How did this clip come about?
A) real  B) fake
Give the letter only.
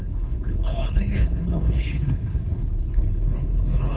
B